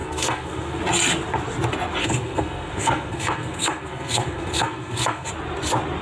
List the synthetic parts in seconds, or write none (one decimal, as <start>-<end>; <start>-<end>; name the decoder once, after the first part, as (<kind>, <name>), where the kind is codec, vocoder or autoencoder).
0.0-0.8 (codec, SNAC); 2.0-5.3